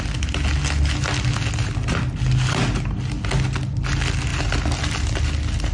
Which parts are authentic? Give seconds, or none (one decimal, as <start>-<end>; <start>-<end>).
0.0-5.7